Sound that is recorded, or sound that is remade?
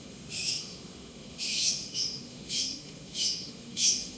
remade